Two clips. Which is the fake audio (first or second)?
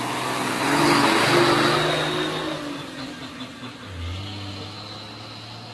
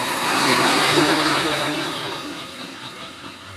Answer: second